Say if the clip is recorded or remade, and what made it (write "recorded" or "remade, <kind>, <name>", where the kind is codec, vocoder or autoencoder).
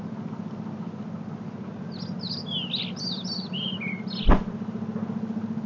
recorded